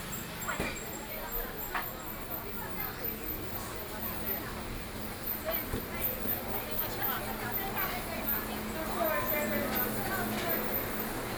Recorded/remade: recorded